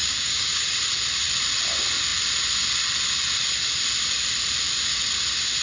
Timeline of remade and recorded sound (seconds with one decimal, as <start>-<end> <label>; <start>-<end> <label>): 0.0-0.6 remade; 0.6-5.6 recorded

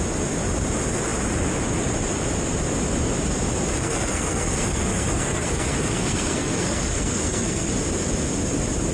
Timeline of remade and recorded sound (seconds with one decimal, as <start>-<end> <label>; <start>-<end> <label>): 0.0-3.7 recorded; 3.7-7.7 remade; 7.7-8.9 recorded